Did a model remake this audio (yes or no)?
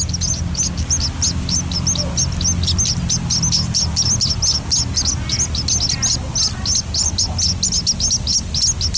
no